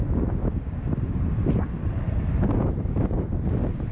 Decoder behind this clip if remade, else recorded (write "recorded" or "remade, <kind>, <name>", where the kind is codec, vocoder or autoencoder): recorded